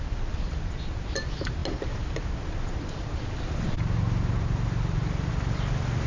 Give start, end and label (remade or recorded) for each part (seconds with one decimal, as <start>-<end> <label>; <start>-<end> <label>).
0.0-6.1 recorded